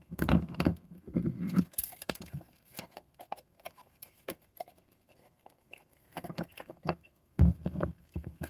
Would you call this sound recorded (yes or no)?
no